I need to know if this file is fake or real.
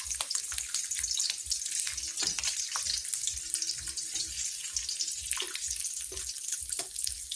real